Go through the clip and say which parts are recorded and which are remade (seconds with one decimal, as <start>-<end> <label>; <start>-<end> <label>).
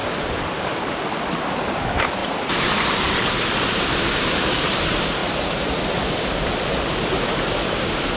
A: 0.0-1.6 recorded; 1.6-5.2 remade; 5.2-7.6 recorded; 7.6-8.2 remade